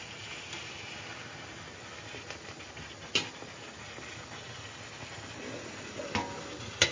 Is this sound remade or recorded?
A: recorded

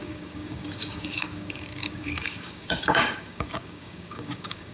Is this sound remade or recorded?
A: remade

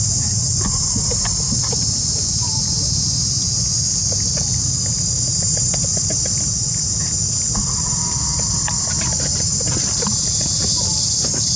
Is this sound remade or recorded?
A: recorded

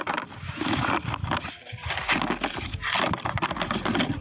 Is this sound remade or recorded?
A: recorded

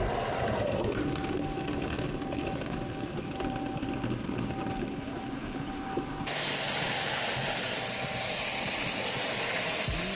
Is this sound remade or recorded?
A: recorded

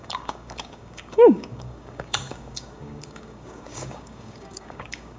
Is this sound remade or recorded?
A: remade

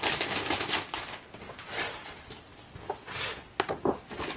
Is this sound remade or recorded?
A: recorded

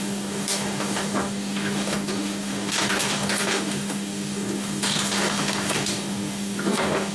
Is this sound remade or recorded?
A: remade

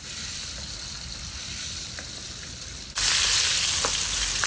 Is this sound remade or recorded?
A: recorded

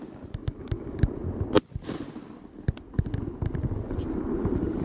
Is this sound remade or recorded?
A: recorded